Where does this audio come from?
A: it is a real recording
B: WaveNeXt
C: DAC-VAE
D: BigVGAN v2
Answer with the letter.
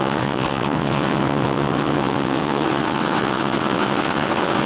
B